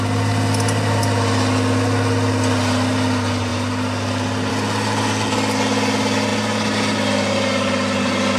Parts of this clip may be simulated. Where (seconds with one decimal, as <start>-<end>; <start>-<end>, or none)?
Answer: none